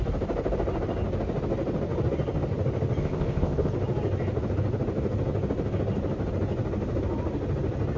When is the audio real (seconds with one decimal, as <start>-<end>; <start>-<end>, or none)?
0.0-3.0; 3.7-8.0

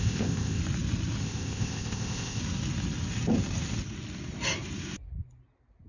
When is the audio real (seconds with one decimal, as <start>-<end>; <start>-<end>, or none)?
0.6-1.2; 2.4-5.9

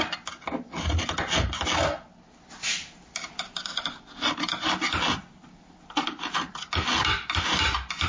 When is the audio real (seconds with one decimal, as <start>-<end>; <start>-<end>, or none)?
0.0-8.1

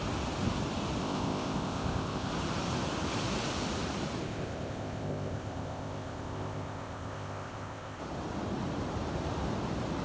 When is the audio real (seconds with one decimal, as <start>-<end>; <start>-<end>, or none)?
0.0-1.0; 2.3-4.2; 8.0-10.0

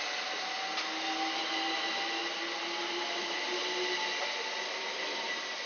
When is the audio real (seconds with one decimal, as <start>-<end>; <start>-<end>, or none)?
0.0-5.7